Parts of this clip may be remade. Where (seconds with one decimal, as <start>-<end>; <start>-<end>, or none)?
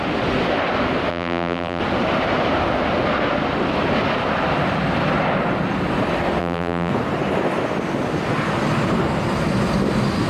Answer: 1.1-1.8; 6.4-6.9